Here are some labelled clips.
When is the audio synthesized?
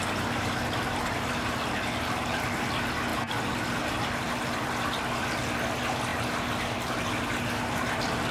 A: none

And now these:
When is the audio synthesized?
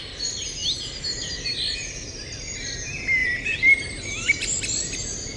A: 0.6-1.6 (vocoder, BigVGAN v2); 3.2-4.6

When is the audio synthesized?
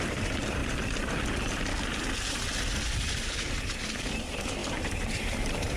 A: none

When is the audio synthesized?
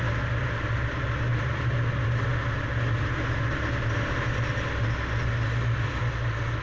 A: 1.3-1.9 (vocoder, BigVGAN v2)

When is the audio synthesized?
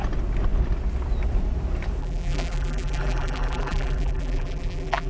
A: 2.0-5.1 (vocoder, BigVGAN v2)